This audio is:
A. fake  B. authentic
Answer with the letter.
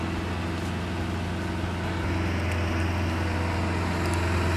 B